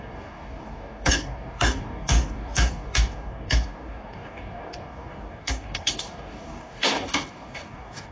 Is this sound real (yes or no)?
no